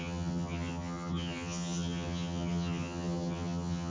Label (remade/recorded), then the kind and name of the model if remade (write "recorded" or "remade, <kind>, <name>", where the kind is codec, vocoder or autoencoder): remade, vocoder, HiFi-GAN